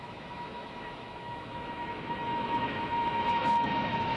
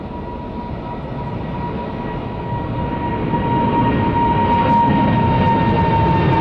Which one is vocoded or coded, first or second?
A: first